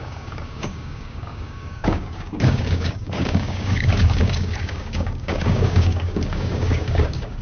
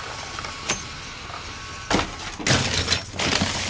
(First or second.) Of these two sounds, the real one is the second